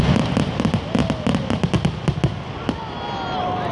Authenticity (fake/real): real